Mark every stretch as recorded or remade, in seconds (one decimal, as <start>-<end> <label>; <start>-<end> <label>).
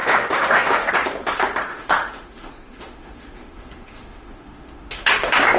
0.0-0.9 remade; 0.9-1.7 recorded; 1.7-5.1 remade; 5.1-5.6 recorded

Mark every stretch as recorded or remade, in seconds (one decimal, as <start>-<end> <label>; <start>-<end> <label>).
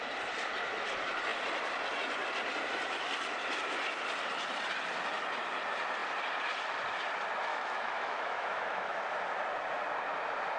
0.0-7.5 recorded; 7.5-9.0 remade; 9.0-10.6 recorded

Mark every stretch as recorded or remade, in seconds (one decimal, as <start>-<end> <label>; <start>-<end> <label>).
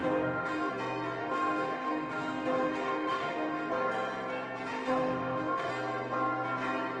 0.0-0.7 remade; 0.7-1.2 recorded; 1.2-3.7 remade; 3.7-4.7 recorded; 4.7-5.7 remade; 5.7-7.0 recorded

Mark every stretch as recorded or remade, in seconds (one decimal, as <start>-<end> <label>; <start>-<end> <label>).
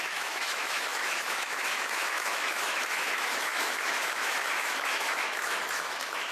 0.0-6.3 remade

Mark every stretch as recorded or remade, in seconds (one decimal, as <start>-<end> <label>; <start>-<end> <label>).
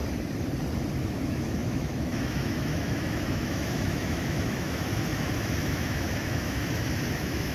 0.0-1.0 recorded; 1.0-7.5 remade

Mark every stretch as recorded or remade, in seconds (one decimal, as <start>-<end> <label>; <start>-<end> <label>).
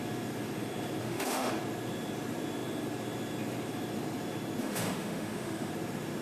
0.0-1.0 recorded; 1.0-1.5 remade; 1.5-4.6 recorded; 4.6-5.7 remade; 5.7-6.2 recorded